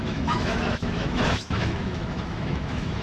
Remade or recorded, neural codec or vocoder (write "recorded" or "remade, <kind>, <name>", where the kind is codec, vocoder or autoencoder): remade, autoencoder, DAC-VAE